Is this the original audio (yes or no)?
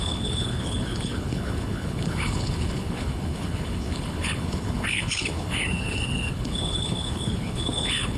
no